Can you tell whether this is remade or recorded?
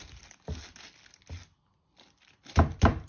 recorded